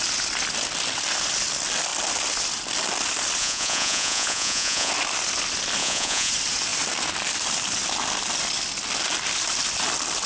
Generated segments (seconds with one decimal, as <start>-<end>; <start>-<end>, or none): 3.4-4.9; 5.8-6.3